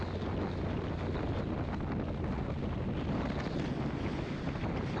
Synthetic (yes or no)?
no